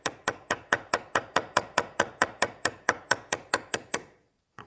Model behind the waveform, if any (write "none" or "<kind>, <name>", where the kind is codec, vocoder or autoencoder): vocoder, Vocos